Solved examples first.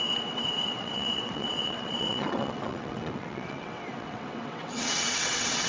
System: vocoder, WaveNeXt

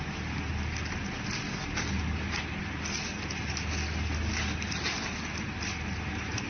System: none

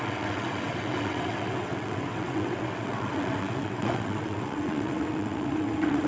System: vocoder, WaveNeXt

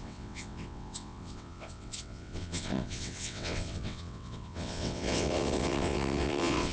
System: vocoder, WaveNeXt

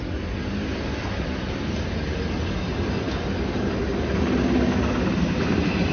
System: none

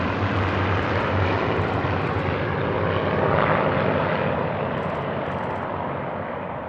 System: none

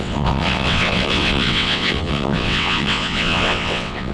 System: vocoder, WaveNeXt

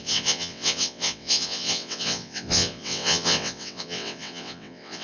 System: vocoder, WaveNeXt